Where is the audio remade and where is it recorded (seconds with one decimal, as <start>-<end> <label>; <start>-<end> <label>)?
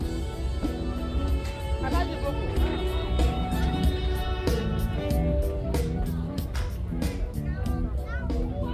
0.0-3.2 recorded; 3.2-5.1 remade; 5.1-8.7 recorded